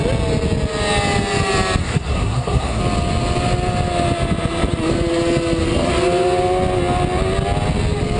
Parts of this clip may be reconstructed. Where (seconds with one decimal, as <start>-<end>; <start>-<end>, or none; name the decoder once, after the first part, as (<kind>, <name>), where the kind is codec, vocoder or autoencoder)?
1.8-2.8 (codec, SNAC)

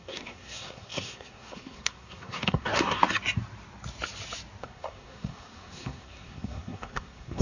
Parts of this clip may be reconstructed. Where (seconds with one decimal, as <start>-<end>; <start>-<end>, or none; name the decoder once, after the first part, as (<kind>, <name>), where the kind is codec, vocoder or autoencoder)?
0.0-3.0 (codec, SNAC); 4.6-7.4